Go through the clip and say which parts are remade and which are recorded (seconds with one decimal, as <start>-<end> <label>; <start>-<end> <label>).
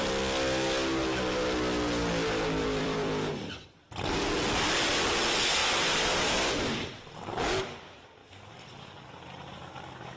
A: 0.0-2.6 recorded; 2.6-3.5 remade; 3.5-5.6 recorded; 5.6-6.5 remade; 6.5-8.2 recorded; 8.2-9.0 remade; 9.0-10.2 recorded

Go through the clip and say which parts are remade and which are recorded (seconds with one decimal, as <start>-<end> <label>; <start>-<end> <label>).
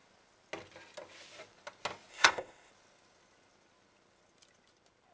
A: 0.0-2.1 recorded; 2.1-2.7 remade; 2.7-5.1 recorded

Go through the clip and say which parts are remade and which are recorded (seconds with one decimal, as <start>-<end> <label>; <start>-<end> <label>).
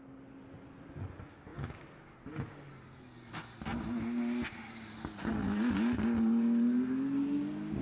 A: 0.0-7.8 recorded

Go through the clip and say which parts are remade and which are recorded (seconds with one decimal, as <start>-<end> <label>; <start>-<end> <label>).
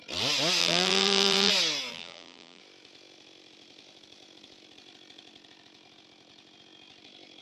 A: 0.0-0.6 recorded; 0.6-1.5 remade; 1.5-1.9 recorded; 1.9-2.6 remade; 2.6-7.4 recorded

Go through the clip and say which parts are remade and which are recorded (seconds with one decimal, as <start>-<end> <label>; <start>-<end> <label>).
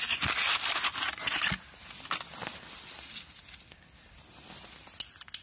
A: 0.0-5.4 recorded